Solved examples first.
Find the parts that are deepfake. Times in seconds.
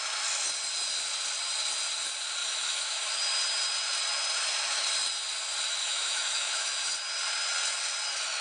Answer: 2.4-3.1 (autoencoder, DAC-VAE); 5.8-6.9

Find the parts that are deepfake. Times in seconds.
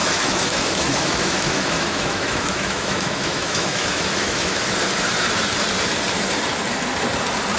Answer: 0.0-4.6 (autoencoder, DAC-VAE)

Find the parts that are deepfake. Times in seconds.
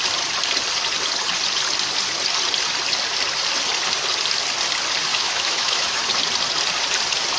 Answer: 5.1-6.0 (autoencoder, DAC-VAE)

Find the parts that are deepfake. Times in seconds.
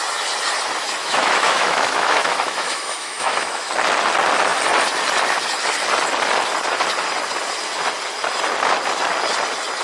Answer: 1.0-3.7 (autoencoder, DAC-VAE)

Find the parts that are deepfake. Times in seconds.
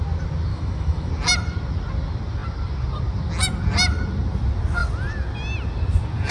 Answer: 0.5-1.1 (autoencoder, DAC-VAE)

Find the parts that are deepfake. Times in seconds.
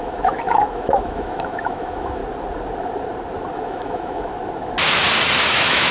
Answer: 0.0-2.2 (autoencoder, DAC-VAE); 3.5-4.3; 5.5-5.9